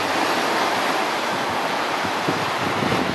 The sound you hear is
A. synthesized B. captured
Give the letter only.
A